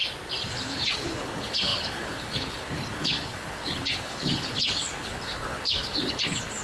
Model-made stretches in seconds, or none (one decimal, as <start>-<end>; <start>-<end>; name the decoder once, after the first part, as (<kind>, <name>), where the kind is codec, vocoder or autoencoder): 0.5-6.6 (codec, HILCodec)